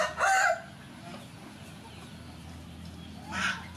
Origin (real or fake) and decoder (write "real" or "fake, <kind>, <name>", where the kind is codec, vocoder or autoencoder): real